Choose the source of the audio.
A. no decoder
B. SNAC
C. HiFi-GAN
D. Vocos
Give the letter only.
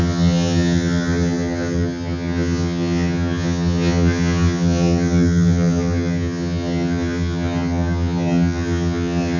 C